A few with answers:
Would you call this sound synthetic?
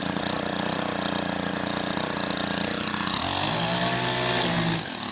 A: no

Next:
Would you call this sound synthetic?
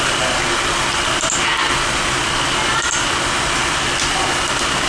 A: no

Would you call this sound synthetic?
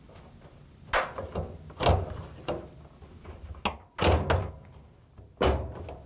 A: no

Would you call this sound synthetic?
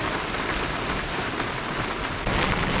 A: no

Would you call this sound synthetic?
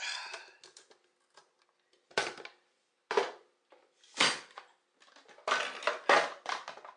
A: no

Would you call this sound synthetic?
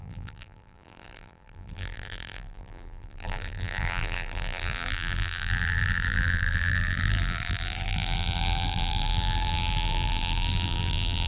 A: yes